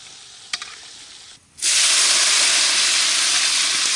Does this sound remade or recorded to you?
recorded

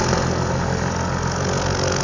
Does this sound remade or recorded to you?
recorded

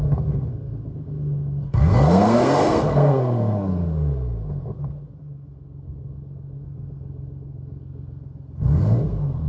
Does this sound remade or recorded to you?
remade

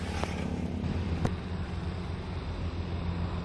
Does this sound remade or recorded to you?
recorded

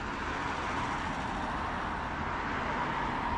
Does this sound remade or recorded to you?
recorded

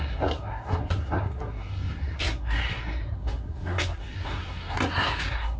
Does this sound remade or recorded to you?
remade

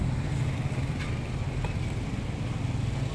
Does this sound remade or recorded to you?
recorded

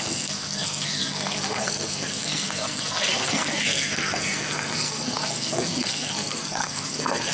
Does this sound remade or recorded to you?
remade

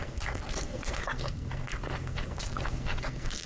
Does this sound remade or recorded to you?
remade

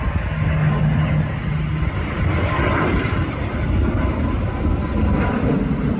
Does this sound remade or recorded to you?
recorded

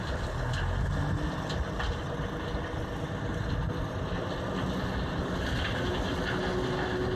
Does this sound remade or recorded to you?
recorded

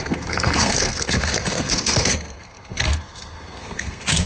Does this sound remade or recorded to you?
remade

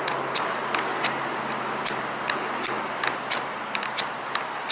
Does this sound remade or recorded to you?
recorded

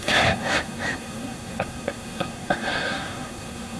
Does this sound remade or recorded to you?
remade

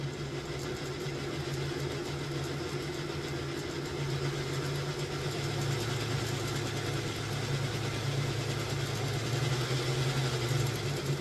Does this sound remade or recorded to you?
recorded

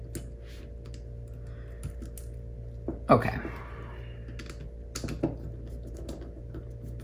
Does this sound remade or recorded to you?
recorded